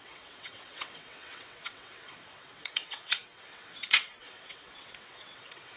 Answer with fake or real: fake